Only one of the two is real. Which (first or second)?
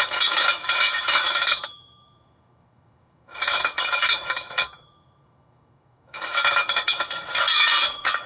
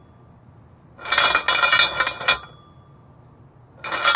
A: second